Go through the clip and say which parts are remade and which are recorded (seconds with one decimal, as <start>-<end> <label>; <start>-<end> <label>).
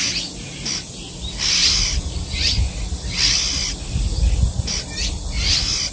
0.0-5.9 recorded